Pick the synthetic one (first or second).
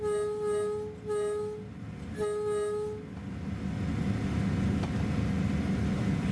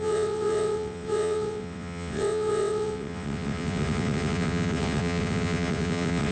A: second